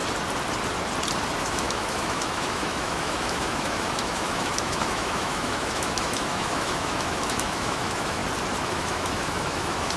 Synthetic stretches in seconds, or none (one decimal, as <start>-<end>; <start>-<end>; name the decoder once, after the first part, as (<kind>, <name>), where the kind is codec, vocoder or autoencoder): 1.4-8.2 (autoencoder, DAC-VAE); 8.7-10.0